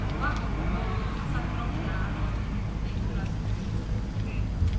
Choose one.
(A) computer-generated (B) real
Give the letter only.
B